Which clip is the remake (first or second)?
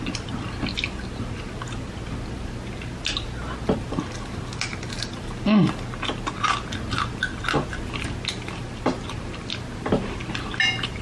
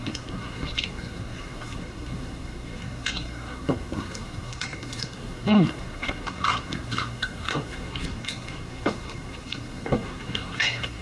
second